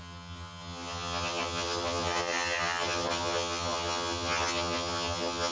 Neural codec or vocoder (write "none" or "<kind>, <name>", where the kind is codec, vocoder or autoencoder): vocoder, HiFi-GAN